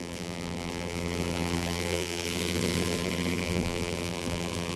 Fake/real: fake